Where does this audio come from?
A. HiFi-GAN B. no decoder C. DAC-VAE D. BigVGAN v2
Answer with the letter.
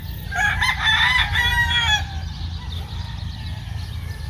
B